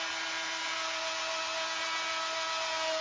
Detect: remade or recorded recorded